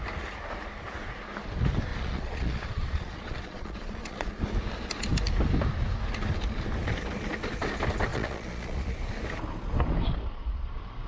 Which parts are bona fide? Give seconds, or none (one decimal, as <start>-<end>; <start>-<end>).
0.0-1.9; 4.3-8.1; 9.0-11.1

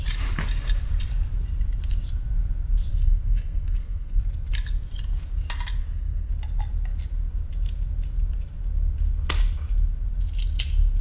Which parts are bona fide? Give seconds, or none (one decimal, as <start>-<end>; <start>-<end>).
0.0-2.9; 4.2-5.8; 6.3-11.0

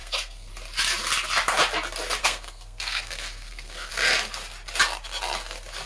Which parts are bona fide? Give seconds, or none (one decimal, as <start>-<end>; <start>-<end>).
0.5-2.2; 3.9-5.9